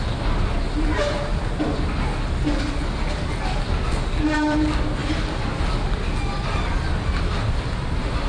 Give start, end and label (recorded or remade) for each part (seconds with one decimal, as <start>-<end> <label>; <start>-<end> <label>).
0.0-8.3 recorded

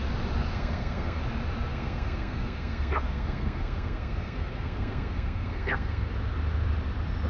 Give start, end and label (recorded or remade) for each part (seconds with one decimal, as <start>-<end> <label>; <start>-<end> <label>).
0.0-0.5 recorded; 0.5-1.2 remade; 1.2-1.7 recorded; 1.7-6.1 remade; 6.1-7.3 recorded

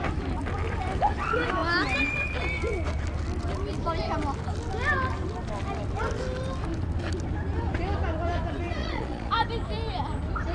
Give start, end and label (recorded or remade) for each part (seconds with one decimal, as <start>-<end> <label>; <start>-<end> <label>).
0.0-8.8 recorded; 8.8-9.3 remade; 9.3-10.5 recorded

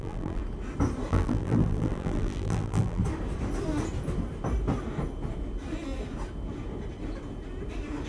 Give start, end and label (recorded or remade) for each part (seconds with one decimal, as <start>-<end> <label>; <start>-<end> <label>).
0.0-0.4 remade; 0.4-1.1 recorded; 1.1-3.0 remade; 3.0-8.1 recorded

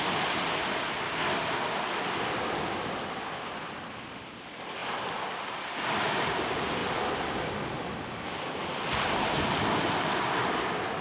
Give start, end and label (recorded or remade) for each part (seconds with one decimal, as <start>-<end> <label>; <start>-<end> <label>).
0.0-11.0 recorded

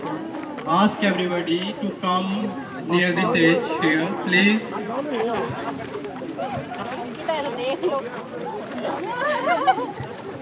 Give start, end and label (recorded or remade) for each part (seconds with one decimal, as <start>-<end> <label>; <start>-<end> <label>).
0.0-3.0 remade; 3.0-3.6 recorded; 3.6-8.1 remade; 8.1-8.7 recorded; 8.7-10.4 remade

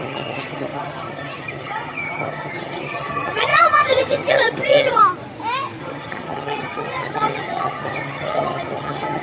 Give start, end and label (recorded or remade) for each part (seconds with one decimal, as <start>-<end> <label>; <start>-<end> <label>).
0.0-5.0 remade; 5.0-5.8 recorded; 5.8-9.2 remade

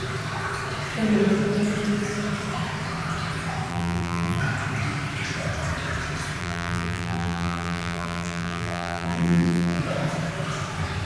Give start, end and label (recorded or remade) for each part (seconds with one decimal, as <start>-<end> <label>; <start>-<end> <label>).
0.0-3.7 recorded; 3.7-4.4 remade; 4.4-6.4 recorded; 6.4-9.8 remade; 9.8-11.1 recorded